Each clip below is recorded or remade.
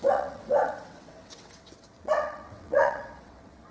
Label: remade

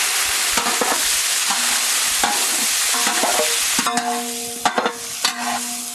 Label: recorded